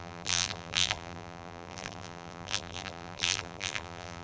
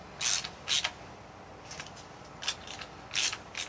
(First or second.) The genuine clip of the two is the second